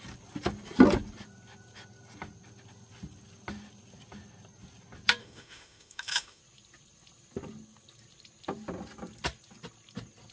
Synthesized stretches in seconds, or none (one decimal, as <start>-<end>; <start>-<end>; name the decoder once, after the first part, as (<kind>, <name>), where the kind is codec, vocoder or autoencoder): 5.2-6.4 (autoencoder, DAC-VAE)

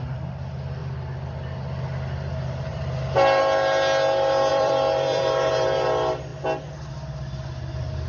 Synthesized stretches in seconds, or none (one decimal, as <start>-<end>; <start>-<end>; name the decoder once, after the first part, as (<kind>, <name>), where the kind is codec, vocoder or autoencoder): 4.5-5.5 (vocoder, BigVGAN v2)

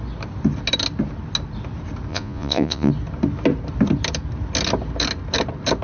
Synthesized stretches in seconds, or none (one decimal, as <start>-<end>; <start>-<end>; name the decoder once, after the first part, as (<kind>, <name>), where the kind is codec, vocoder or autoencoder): 2.1-2.9 (vocoder, Vocos)